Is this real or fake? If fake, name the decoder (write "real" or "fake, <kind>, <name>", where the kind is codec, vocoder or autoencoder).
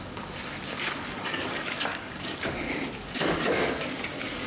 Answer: fake, codec, DAC